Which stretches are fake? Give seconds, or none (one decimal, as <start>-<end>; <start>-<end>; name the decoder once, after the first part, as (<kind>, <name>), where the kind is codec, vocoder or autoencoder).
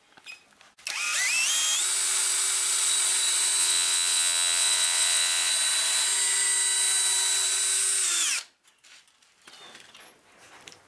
3.6-5.5 (vocoder, WaveNeXt)